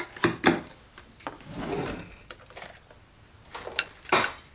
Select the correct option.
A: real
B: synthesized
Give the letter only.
A